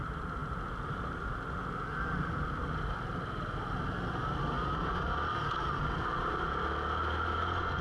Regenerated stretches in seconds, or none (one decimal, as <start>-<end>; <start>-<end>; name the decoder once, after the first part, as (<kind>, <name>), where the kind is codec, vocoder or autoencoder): none